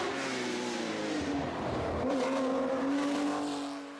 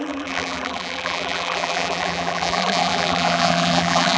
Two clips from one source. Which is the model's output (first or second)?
second